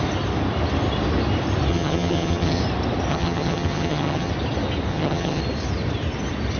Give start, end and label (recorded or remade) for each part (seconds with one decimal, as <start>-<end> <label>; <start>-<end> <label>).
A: 0.0-1.7 recorded; 1.7-2.6 remade; 2.6-3.1 recorded; 3.1-4.3 remade; 4.3-4.9 recorded; 4.9-5.4 remade; 5.4-6.6 recorded